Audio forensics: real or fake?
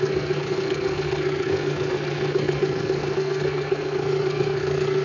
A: fake